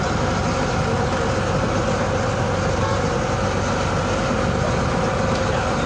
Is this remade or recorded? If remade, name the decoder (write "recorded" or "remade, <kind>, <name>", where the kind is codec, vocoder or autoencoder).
recorded